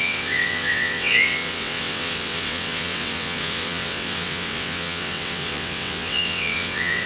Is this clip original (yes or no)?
no